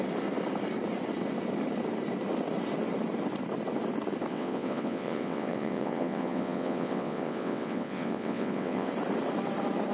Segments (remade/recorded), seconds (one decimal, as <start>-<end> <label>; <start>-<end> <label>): 0.0-4.3 recorded; 4.3-8.9 remade; 8.9-9.9 recorded